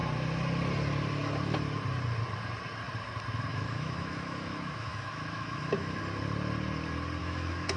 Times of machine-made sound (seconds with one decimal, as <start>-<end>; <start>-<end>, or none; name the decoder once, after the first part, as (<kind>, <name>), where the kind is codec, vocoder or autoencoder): 3.5-6.0 (autoencoder, DAC-VAE); 7.2-7.8